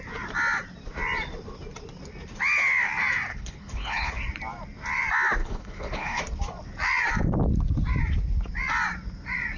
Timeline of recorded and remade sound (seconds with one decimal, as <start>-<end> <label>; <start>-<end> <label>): 0.0-3.3 recorded; 3.3-4.1 remade; 4.1-5.4 recorded; 5.4-6.2 remade; 6.2-9.6 recorded